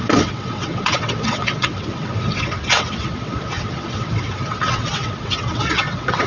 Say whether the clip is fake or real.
fake